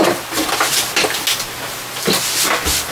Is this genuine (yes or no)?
yes